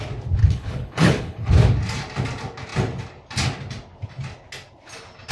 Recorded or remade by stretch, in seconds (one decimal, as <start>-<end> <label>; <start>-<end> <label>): 0.0-0.4 recorded; 0.4-1.5 remade; 1.5-5.3 recorded